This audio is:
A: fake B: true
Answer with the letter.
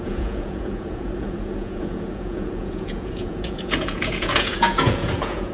A